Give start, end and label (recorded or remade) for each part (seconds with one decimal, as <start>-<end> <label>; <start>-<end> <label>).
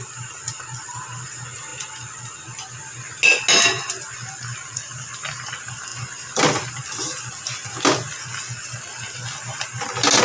0.0-10.2 recorded